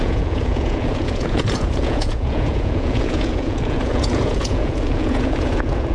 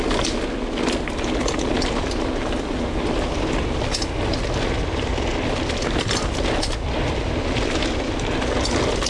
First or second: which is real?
second